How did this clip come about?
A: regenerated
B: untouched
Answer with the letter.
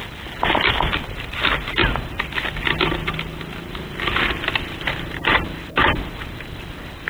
B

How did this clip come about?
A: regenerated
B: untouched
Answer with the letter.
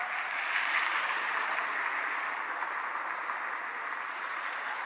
B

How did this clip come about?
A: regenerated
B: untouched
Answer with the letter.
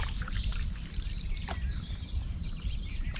A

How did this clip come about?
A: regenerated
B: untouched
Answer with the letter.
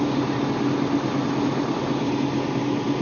B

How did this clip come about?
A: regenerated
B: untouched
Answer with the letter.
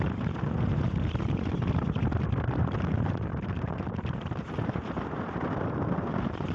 A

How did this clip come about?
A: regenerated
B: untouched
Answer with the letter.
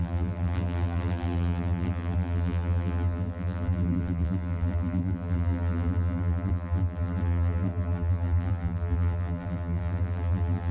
A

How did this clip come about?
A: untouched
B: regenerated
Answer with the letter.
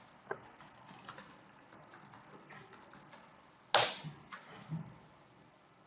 A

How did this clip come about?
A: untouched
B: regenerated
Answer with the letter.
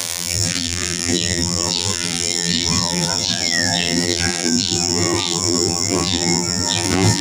B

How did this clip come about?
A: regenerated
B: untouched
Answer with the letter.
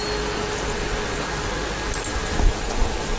B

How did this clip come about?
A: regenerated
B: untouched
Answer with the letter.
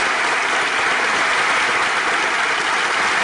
B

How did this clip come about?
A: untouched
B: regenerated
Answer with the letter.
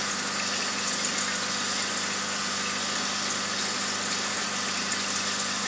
A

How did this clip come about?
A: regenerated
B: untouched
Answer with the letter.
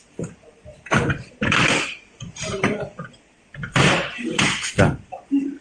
A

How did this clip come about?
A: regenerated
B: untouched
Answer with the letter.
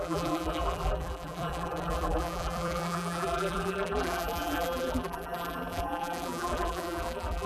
A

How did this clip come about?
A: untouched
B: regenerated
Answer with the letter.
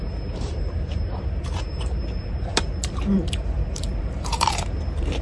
B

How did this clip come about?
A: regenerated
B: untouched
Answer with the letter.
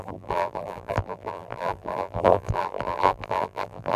A